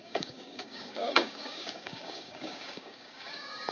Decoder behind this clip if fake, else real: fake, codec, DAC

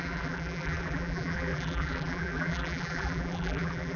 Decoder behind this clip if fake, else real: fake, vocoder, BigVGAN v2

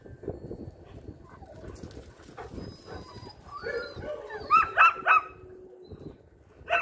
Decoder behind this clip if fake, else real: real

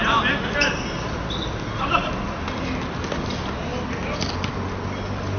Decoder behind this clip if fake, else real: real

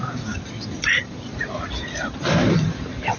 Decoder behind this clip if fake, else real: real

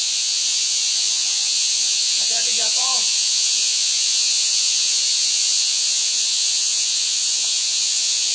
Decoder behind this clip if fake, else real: fake, vocoder, Vocos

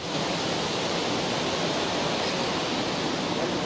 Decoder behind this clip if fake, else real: real